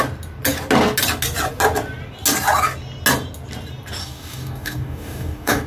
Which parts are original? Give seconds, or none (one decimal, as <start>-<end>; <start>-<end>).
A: 0.0-4.0